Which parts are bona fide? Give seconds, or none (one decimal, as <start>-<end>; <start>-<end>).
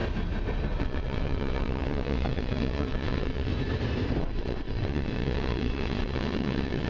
0.0-0.8; 3.5-4.2